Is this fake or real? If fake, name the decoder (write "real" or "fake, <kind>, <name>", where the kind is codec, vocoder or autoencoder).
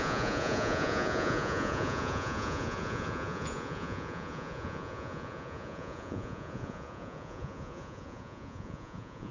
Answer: fake, vocoder, Vocos